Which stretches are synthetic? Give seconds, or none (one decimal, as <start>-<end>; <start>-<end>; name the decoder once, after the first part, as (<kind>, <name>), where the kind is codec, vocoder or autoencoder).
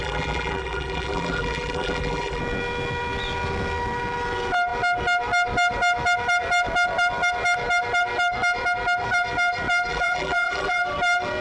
0.0-2.4 (vocoder, BigVGAN v2); 9.9-10.8